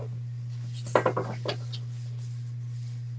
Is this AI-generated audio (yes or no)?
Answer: no